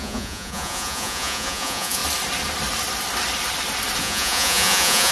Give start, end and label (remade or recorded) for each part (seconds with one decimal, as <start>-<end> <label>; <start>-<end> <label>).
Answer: 0.0-2.0 remade; 2.0-4.0 recorded; 4.0-5.1 remade